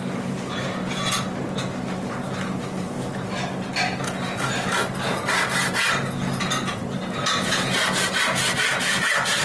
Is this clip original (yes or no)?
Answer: yes